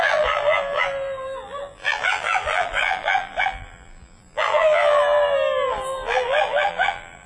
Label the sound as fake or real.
fake